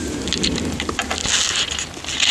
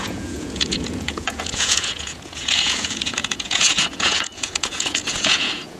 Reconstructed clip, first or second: second